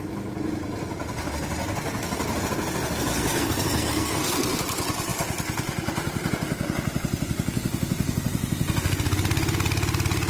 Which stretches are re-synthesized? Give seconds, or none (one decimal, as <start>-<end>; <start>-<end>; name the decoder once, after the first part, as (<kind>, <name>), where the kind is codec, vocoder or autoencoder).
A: 3.1-4.6 (codec, SNAC)